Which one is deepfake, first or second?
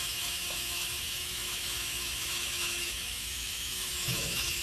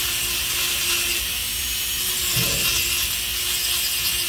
first